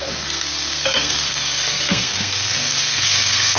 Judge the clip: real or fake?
fake